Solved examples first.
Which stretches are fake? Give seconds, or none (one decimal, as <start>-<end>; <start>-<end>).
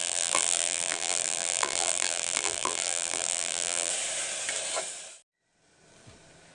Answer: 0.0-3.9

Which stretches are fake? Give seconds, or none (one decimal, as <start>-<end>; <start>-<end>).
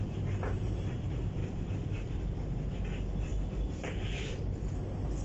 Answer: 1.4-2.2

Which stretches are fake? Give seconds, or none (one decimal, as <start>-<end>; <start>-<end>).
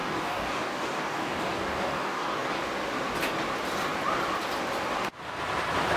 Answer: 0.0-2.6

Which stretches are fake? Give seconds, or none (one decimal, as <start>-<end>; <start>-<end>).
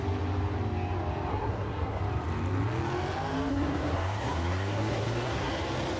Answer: 1.3-2.0; 3.5-5.5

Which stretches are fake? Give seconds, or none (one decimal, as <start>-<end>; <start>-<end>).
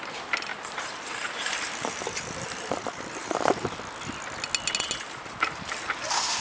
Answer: 0.5-3.8